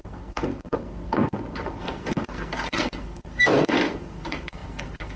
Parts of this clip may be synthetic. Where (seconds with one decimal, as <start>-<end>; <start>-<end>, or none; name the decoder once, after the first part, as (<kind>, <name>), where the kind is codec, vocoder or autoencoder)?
0.0-5.2 (codec, SNAC)